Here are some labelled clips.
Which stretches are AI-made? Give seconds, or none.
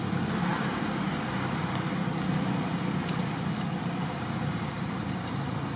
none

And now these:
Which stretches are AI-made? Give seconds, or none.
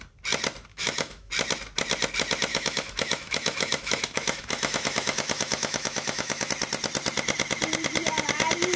0.7-1.3 (autoencoder, DAC-VAE); 2.5-6.5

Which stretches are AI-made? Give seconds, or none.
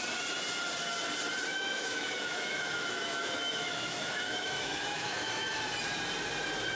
1.5-5.6 (autoencoder, DAC-VAE)